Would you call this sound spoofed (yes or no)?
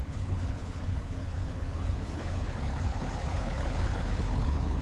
yes